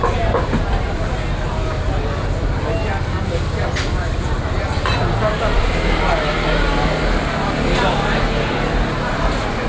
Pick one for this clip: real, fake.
real